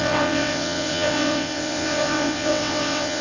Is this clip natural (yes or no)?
no